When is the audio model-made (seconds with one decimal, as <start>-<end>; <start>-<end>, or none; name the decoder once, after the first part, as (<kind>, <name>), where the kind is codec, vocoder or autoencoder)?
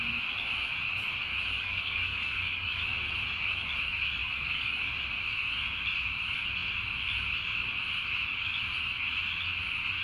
1.5-2.8 (codec, DAC); 4.2-4.9